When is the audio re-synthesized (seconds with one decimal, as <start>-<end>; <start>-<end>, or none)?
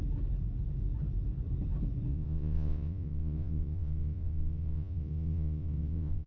2.1-6.3